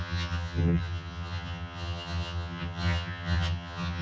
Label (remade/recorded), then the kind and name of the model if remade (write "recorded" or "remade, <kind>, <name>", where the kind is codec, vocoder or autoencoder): remade, vocoder, HiFi-GAN